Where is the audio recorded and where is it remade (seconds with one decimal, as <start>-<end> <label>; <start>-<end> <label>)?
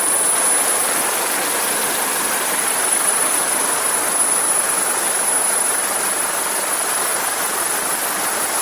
0.0-1.8 recorded; 1.8-4.5 remade; 4.5-7.1 recorded; 7.1-7.8 remade; 7.8-8.6 recorded